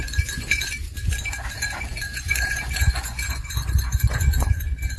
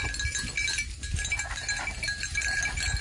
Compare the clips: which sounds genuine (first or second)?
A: second